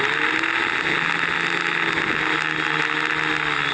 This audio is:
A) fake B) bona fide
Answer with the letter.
B